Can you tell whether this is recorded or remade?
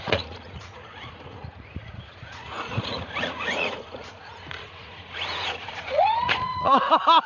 remade